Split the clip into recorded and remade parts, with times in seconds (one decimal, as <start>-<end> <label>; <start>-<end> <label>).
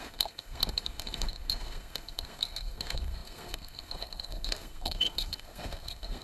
0.0-6.2 remade